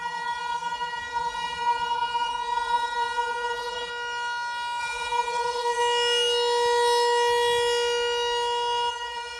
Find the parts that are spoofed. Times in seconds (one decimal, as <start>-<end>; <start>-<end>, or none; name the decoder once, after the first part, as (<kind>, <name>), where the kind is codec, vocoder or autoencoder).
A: 0.0-3.9 (vocoder, BigVGAN v2); 4.8-5.8; 8.9-9.4